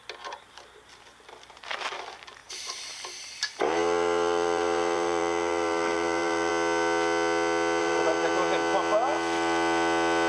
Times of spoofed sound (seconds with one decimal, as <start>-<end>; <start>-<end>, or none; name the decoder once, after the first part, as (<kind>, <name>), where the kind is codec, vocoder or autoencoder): 2.4-6.5 (vocoder, BigVGAN v2); 7.8-8.3